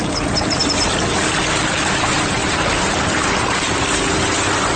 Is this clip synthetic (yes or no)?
no